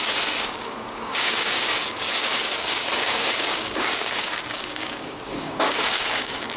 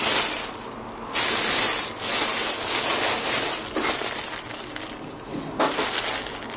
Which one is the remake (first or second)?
first